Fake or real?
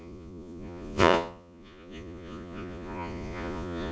fake